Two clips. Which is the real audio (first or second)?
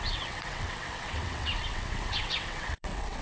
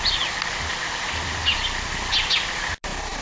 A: second